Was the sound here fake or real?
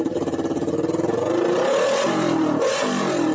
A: fake